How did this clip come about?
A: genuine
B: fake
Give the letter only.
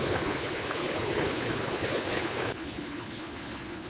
B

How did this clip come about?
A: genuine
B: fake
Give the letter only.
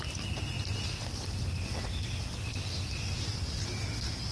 A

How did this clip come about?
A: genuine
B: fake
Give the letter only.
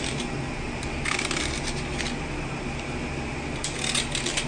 A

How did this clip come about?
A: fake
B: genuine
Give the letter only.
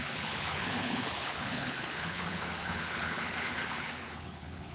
A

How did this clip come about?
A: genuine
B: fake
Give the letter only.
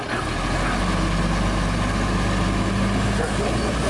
A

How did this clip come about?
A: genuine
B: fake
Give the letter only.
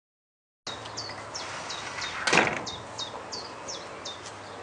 A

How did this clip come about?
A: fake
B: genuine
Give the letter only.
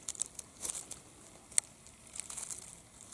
B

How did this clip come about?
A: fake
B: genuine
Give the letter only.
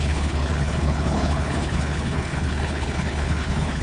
A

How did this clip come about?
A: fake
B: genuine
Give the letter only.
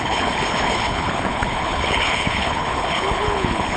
A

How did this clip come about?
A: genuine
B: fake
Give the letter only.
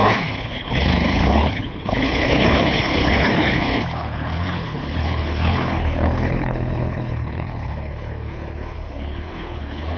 B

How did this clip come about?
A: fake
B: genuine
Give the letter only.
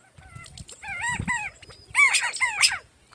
B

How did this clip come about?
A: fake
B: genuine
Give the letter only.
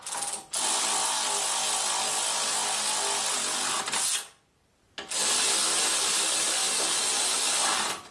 B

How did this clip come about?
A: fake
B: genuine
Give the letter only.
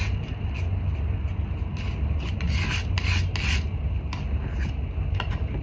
B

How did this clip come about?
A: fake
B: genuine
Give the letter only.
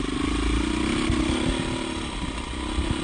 B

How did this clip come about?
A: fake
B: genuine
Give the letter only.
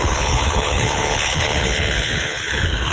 A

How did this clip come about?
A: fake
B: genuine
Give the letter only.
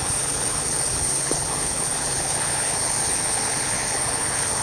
A